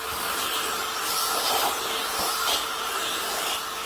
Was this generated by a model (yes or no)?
no